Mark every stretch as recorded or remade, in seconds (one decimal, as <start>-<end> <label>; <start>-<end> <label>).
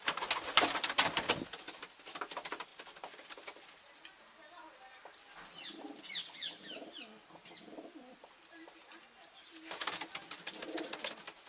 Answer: 0.0-11.5 recorded